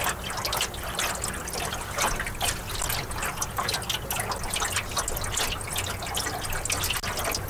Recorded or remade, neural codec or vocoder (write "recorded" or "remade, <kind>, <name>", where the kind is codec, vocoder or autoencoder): recorded